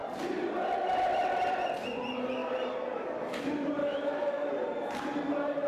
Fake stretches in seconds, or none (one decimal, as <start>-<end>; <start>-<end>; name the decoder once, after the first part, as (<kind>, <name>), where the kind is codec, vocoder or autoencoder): 3.8-4.5 (autoencoder, DAC-VAE)